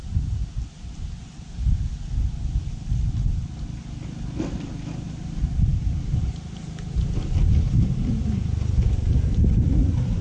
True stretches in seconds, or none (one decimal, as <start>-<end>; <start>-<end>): 0.0-10.2